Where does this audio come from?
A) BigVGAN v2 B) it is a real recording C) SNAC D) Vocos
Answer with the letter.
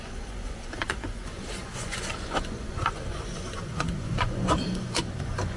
D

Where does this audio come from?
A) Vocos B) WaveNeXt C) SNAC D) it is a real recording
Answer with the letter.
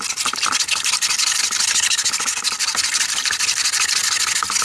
D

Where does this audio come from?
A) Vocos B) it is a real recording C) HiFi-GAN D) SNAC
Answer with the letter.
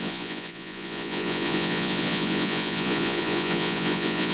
A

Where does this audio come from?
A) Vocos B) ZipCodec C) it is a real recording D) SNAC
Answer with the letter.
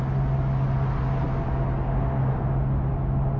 C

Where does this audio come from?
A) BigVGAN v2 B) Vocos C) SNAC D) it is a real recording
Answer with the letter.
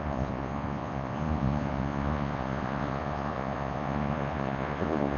B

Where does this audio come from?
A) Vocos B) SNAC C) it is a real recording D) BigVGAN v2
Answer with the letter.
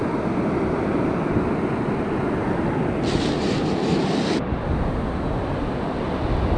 C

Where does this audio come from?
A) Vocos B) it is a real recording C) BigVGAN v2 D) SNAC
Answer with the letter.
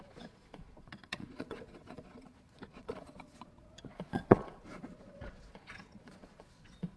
A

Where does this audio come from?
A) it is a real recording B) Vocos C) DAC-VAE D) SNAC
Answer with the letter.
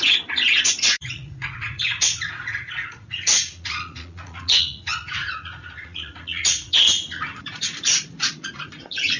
B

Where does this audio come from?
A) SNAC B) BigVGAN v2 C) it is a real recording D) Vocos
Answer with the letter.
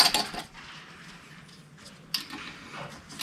C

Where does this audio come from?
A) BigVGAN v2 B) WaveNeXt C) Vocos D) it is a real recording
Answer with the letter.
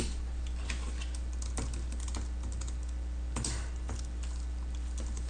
D